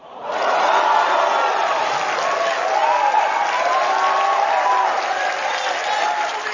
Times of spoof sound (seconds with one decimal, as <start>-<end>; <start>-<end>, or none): 0.0-0.7